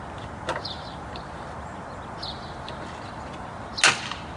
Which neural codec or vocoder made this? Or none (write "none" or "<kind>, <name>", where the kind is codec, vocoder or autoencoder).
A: none